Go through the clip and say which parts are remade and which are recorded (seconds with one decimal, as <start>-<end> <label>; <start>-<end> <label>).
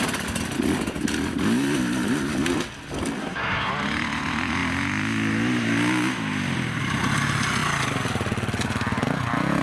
0.0-3.2 recorded; 3.2-3.7 remade; 3.7-9.6 recorded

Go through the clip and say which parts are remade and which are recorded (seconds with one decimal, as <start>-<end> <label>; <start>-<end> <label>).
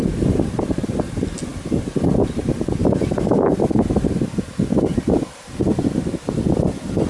0.0-2.8 recorded; 2.8-3.7 remade; 3.7-7.1 recorded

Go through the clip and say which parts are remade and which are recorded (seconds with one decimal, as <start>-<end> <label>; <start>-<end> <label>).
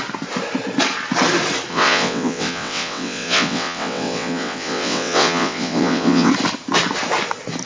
0.0-1.7 recorded; 1.7-6.3 remade; 6.3-7.7 recorded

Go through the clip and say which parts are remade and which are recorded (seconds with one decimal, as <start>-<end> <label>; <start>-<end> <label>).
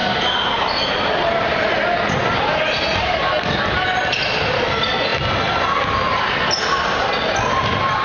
0.0-8.0 recorded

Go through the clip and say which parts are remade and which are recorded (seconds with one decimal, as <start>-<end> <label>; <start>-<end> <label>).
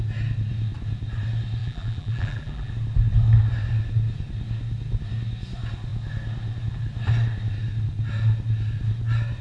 0.0-1.6 recorded; 1.6-2.7 remade; 2.7-9.4 recorded